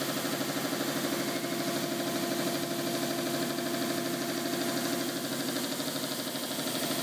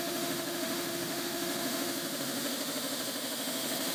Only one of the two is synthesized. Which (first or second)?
second